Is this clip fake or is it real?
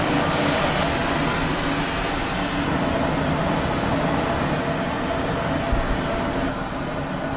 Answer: real